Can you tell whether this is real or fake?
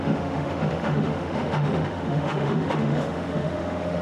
fake